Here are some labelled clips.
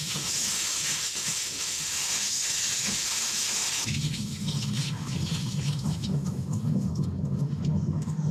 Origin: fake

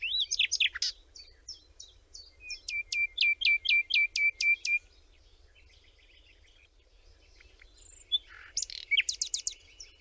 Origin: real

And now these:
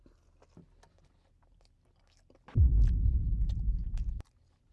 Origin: real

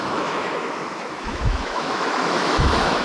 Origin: fake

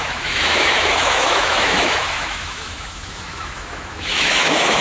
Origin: fake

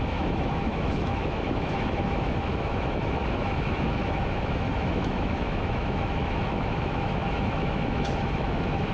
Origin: fake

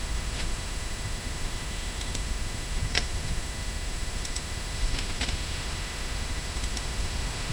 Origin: fake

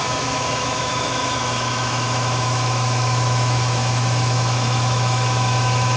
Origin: fake